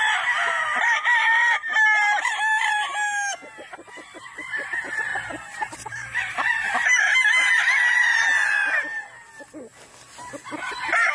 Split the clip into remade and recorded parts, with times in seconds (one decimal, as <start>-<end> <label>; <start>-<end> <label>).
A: 0.0-1.2 recorded; 1.2-2.7 remade; 2.7-5.1 recorded; 5.1-7.6 remade; 7.6-11.1 recorded